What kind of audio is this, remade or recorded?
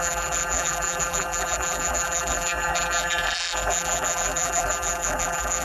remade